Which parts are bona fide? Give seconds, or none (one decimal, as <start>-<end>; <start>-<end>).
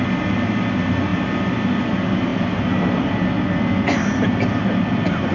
0.0-5.3